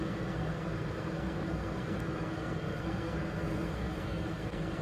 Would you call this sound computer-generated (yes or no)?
yes